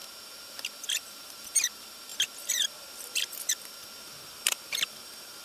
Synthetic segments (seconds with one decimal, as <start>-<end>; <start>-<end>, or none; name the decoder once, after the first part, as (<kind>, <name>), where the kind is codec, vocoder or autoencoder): 0.5-5.4 (vocoder, BigVGAN v2)